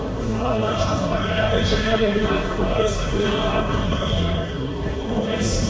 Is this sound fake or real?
fake